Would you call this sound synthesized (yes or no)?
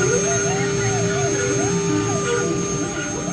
no